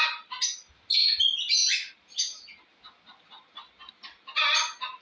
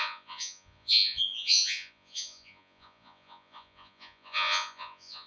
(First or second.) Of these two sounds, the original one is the first